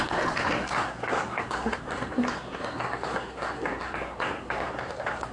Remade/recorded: remade